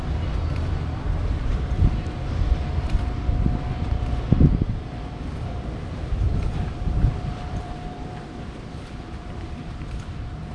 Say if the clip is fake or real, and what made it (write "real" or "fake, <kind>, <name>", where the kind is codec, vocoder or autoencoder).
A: fake, vocoder, BigVGAN v2